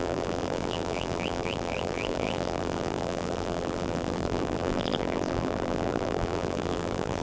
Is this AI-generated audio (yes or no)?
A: yes